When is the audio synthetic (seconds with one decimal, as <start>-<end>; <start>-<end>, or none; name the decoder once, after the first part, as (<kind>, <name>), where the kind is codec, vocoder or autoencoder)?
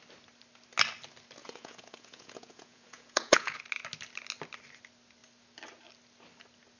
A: 1.4-3.6 (vocoder, Vocos)